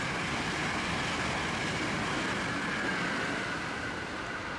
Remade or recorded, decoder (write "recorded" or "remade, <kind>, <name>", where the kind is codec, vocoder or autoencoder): recorded